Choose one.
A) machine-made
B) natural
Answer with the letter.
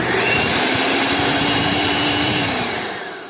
A